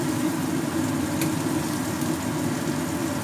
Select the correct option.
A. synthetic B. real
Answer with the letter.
B